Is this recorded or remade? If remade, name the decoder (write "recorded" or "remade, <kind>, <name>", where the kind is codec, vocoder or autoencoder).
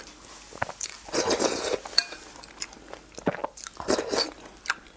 recorded